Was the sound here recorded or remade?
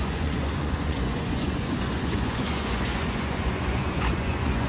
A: remade